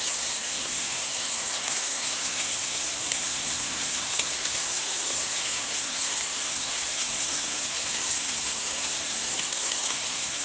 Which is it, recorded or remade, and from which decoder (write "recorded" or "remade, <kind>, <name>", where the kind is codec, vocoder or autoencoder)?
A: remade, codec, SNAC